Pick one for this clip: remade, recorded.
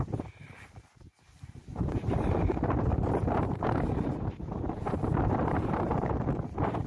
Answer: remade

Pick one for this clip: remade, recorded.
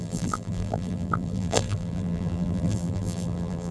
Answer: remade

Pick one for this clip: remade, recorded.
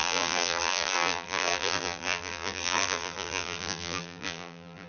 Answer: remade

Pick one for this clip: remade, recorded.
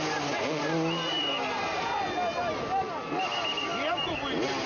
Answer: recorded